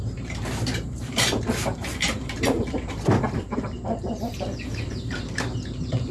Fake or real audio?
fake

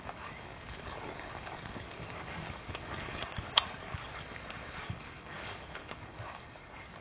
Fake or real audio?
fake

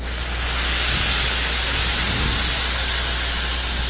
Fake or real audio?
real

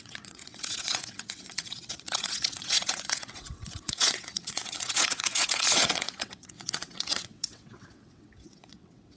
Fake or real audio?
fake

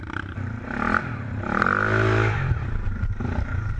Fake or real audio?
fake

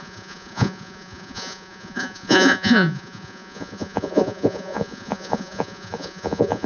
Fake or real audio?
fake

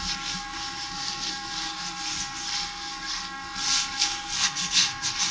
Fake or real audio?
fake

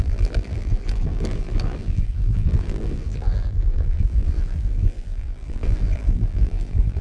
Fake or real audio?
fake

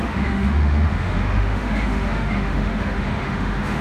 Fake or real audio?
fake